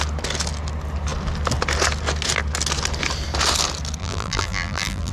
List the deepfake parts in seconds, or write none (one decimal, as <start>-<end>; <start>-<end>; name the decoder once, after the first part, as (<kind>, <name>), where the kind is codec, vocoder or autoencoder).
4.0-5.1 (vocoder, BigVGAN v2)